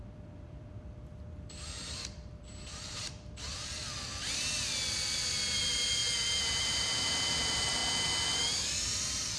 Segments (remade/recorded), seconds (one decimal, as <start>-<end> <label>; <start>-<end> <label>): 0.0-3.8 remade; 3.8-5.6 recorded; 5.6-6.0 remade; 6.0-6.7 recorded; 6.7-7.8 remade; 7.8-8.6 recorded; 8.6-9.4 remade

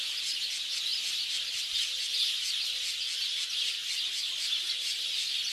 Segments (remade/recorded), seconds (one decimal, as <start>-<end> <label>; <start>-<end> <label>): 0.0-5.5 recorded

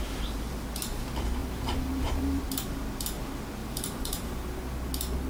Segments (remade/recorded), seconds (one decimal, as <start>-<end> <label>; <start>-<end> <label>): 0.0-1.4 recorded; 1.4-2.4 remade; 2.4-3.6 recorded; 3.6-4.5 remade; 4.5-5.3 recorded

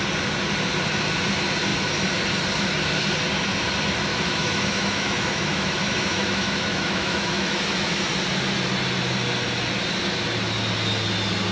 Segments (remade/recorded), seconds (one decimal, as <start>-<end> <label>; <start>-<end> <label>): 0.0-4.1 recorded; 4.1-8.0 remade; 8.0-11.5 recorded

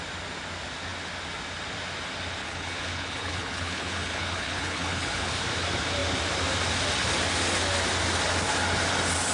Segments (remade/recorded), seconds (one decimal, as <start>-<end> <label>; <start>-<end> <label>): 0.0-2.4 recorded; 2.4-5.3 remade; 5.3-9.3 recorded

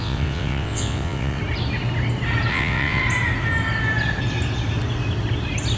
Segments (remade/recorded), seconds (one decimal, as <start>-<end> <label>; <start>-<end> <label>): 0.0-1.4 remade; 1.4-2.5 recorded; 2.5-3.0 remade; 3.0-5.8 recorded

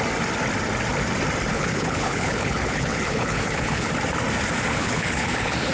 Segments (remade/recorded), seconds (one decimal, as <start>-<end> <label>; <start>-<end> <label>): 0.0-1.5 recorded; 1.5-3.9 remade; 3.9-4.7 recorded; 4.7-5.7 remade